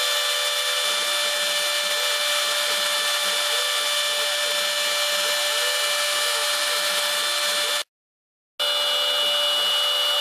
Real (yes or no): yes